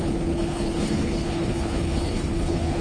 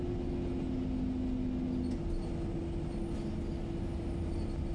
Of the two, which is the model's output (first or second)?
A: first